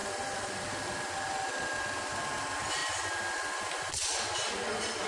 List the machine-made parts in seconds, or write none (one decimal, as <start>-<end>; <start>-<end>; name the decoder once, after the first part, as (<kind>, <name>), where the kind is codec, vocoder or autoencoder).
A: none